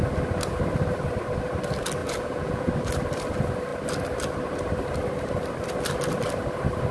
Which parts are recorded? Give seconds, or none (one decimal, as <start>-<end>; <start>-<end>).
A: 0.0-2.0; 2.7-6.9